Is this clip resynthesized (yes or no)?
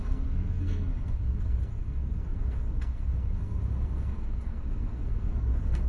yes